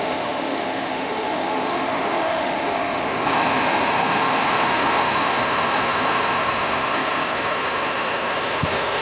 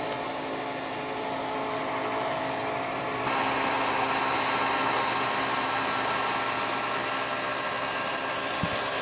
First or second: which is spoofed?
first